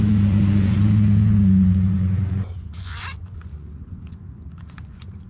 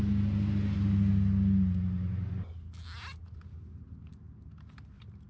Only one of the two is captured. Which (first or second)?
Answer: second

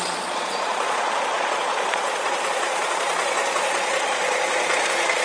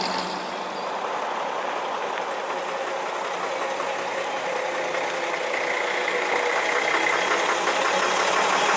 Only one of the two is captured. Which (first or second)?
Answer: second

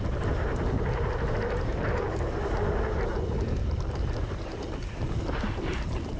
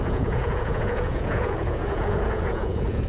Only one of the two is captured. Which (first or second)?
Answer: first